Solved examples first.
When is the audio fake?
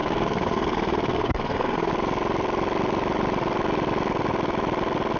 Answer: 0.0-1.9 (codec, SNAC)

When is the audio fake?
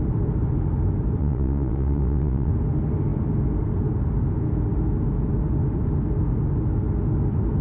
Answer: 1.2-2.5 (vocoder, Vocos)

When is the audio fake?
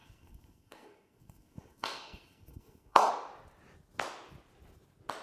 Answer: 0.0-3.1 (codec, SNAC)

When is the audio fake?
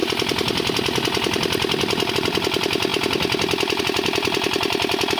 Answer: 2.1-5.2 (vocoder, BigVGAN v2)